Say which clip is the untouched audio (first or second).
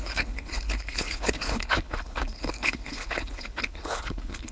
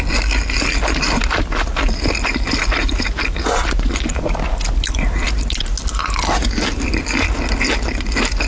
second